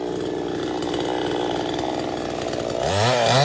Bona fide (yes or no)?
yes